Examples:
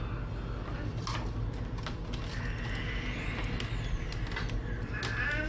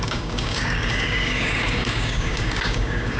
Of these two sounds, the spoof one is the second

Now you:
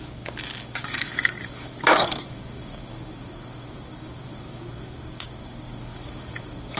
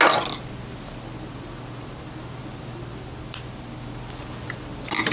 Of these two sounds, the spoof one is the first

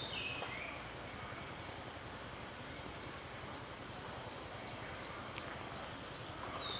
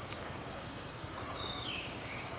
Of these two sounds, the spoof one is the second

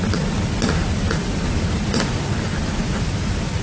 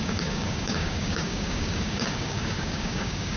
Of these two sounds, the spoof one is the second